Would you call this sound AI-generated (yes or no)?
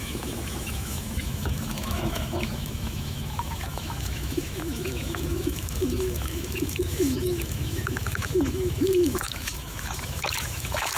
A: yes